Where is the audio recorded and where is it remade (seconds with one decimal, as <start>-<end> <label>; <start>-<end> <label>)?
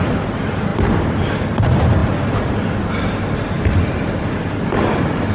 0.0-0.7 recorded; 0.7-1.4 remade; 1.4-5.3 recorded